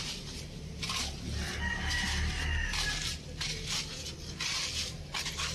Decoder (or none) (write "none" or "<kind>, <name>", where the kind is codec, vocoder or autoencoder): none